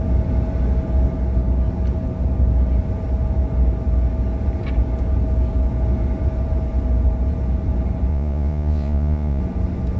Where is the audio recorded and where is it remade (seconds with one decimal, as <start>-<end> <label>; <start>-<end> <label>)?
0.0-8.1 recorded; 8.1-9.4 remade; 9.4-10.0 recorded